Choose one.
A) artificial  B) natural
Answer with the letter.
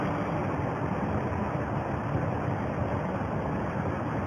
B